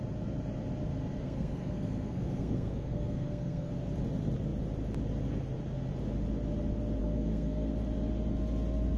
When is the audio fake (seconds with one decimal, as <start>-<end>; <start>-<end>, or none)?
1.2-3.7; 7.0-7.7